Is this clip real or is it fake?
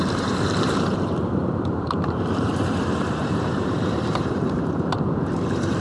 fake